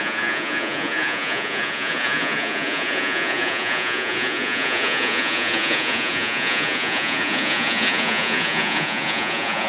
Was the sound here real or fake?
fake